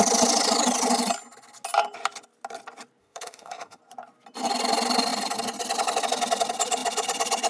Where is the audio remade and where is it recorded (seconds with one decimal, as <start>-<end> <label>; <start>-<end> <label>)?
0.0-3.0 recorded; 3.0-3.8 remade; 3.8-7.5 recorded